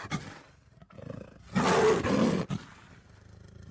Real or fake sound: real